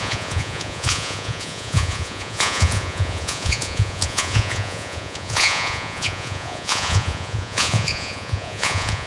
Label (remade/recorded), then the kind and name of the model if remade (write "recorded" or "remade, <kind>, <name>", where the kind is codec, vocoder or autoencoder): remade, vocoder, Vocos